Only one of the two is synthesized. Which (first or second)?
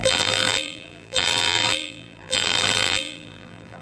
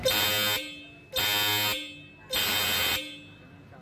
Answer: first